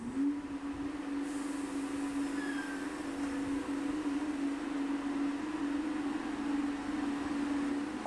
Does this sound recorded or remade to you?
recorded